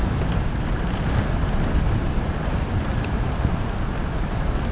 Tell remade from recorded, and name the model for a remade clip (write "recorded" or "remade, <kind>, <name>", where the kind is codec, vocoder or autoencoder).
recorded